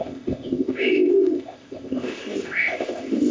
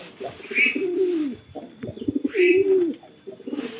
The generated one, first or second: first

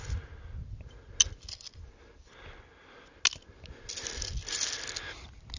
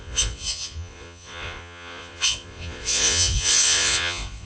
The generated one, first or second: second